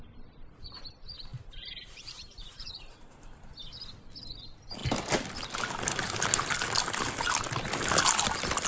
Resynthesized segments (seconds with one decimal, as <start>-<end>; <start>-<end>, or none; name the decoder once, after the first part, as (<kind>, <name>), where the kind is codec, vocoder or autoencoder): 1.3-3.5 (vocoder, BigVGAN v2)